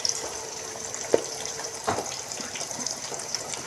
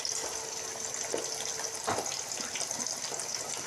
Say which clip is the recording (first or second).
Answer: second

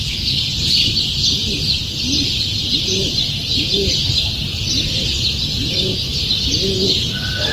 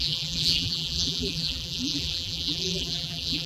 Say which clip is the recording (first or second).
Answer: first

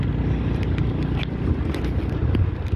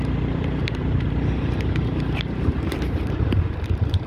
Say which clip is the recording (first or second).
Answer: first